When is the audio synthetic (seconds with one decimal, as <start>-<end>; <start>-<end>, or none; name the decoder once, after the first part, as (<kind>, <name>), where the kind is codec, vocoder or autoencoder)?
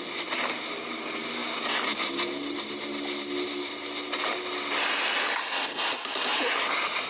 none